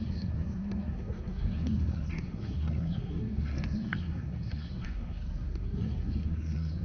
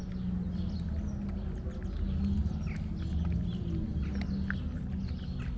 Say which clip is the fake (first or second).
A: first